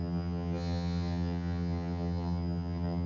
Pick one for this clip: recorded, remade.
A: remade